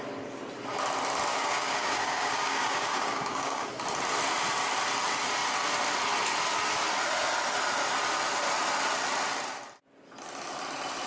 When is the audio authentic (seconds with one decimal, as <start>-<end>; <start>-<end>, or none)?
0.0-1.3; 3.6-11.1